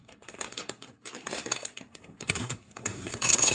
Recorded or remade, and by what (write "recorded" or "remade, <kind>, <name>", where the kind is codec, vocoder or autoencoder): remade, codec, SNAC